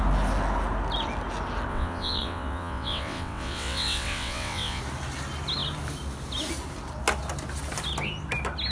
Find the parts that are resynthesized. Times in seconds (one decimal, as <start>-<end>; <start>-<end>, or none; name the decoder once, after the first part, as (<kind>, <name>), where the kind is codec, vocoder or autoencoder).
1.7-4.8 (vocoder, WaveNeXt)